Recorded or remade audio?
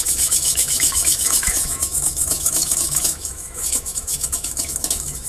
remade